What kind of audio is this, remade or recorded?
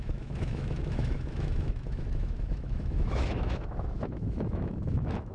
remade